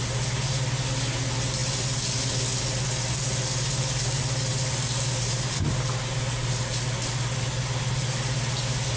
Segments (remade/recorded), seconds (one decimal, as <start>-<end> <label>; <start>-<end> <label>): 0.0-9.0 recorded